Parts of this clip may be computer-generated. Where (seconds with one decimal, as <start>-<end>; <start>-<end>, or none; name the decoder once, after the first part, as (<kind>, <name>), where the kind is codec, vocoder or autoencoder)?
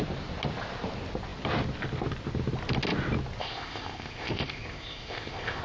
3.4-5.6 (codec, ZipCodec)